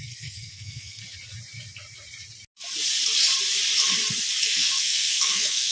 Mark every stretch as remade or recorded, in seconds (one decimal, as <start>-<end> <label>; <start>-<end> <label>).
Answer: 0.0-1.0 remade; 1.0-4.4 recorded; 4.4-5.7 remade